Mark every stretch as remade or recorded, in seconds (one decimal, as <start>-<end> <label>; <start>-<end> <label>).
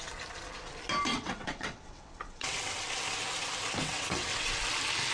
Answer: 0.0-1.1 recorded; 1.1-2.9 remade; 2.9-3.8 recorded; 3.8-4.5 remade; 4.5-5.1 recorded